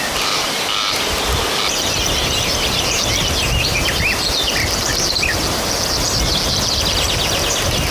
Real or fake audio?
real